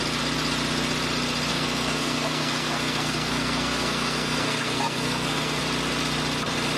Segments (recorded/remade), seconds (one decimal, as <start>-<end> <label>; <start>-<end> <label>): 0.0-1.5 recorded; 1.5-5.6 remade; 5.6-6.8 recorded